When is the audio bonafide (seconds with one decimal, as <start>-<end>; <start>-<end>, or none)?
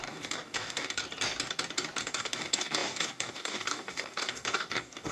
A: 1.0-2.0